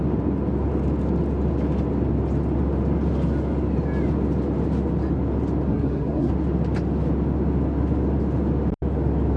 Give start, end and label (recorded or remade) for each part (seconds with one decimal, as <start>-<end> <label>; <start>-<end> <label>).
0.0-5.7 recorded; 5.7-6.3 remade; 6.3-9.4 recorded